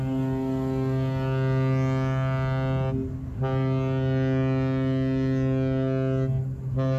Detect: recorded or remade recorded